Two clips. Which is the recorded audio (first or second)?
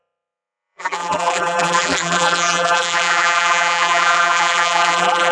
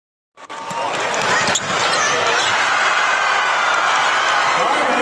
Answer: second